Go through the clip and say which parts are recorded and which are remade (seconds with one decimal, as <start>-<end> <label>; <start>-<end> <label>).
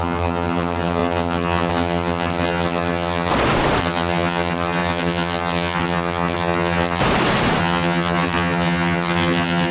0.0-3.3 remade; 3.3-3.8 recorded; 3.8-7.0 remade; 7.0-7.6 recorded; 7.6-9.7 remade